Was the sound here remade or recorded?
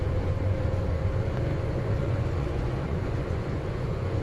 remade